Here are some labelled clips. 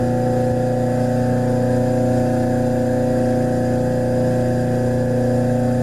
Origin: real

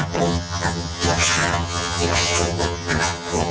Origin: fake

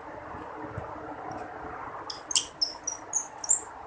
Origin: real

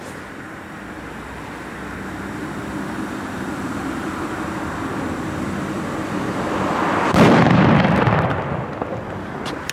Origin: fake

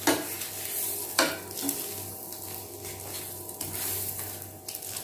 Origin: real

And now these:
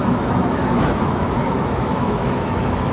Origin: fake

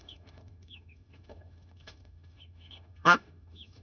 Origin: fake